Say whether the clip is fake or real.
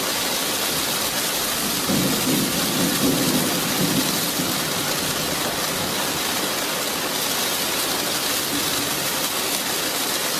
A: real